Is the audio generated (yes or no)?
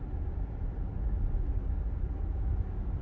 no